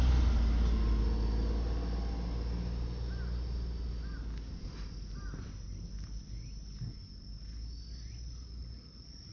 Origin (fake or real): real